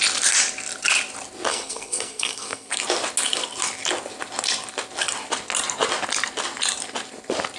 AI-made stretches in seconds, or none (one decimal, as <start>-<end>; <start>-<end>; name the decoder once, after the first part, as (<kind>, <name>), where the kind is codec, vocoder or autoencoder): 1.5-2.7 (codec, SNAC)